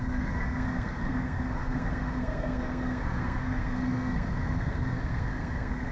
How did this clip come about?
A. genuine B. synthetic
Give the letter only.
B